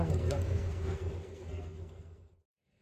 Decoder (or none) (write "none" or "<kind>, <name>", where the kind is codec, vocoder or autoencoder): codec, SNAC